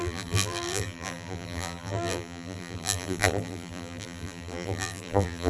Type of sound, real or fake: fake